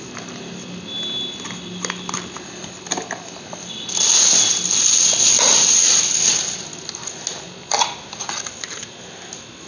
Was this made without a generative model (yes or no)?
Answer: yes